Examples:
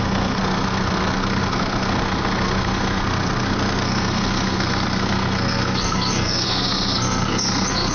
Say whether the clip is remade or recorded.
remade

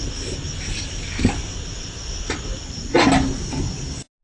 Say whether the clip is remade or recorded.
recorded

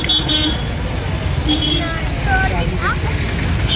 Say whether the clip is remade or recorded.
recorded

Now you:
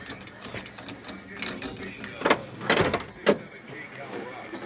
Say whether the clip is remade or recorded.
recorded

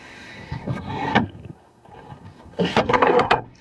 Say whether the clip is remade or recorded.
remade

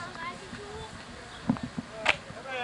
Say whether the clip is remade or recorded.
recorded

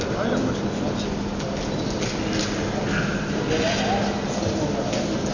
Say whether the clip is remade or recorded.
recorded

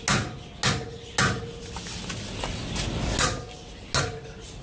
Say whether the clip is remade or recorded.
recorded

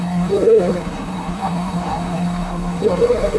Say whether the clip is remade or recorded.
remade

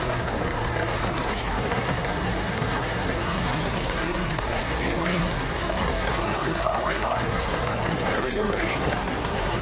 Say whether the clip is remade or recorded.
remade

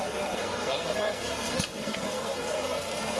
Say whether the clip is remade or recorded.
remade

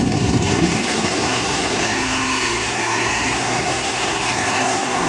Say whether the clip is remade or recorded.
remade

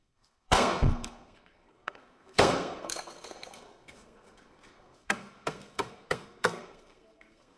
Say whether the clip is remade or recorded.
remade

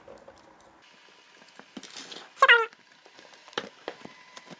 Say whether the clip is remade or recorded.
recorded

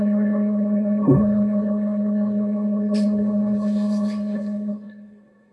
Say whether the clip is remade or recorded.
remade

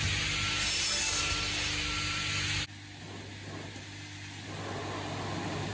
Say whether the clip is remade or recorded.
recorded